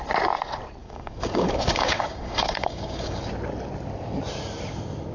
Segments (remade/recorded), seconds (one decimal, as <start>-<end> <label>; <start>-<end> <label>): 0.0-0.8 recorded; 0.8-3.2 remade; 3.2-5.1 recorded